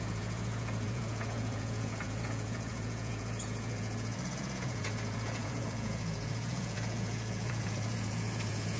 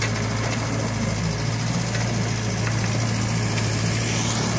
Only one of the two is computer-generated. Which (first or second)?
first